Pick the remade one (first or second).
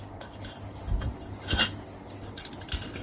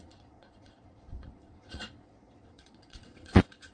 second